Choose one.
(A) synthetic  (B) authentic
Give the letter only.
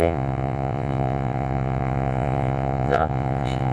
A